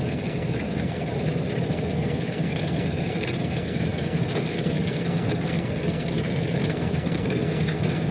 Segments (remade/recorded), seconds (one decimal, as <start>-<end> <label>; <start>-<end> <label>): 0.0-1.1 remade; 1.1-1.7 recorded; 1.7-8.1 remade